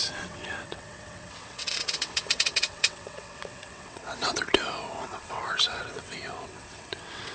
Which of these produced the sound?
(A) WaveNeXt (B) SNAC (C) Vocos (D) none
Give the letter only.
A